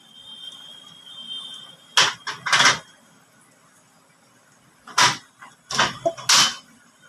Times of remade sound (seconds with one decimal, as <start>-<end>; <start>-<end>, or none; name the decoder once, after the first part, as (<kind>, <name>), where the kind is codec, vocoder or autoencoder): none